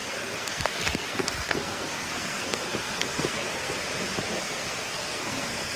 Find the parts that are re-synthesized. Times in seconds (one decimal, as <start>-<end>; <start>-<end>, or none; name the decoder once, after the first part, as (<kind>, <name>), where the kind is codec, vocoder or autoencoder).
0.0-3.8 (codec, SNAC); 4.4-5.8